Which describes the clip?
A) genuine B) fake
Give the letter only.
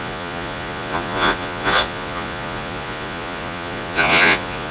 B